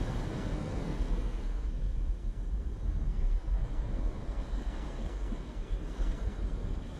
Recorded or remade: remade